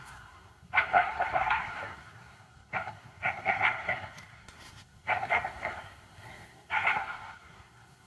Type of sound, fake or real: fake